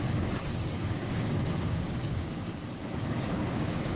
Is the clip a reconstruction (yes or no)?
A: yes